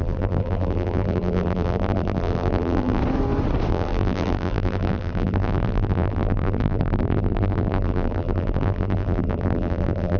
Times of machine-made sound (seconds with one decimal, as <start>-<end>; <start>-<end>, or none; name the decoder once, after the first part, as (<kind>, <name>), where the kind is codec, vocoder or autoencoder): 0.0-3.0 (vocoder, BigVGAN v2); 3.7-10.2